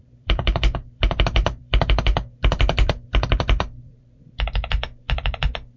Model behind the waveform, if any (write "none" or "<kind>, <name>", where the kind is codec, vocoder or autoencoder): vocoder, BigVGAN v2